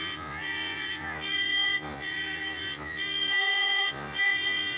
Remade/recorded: remade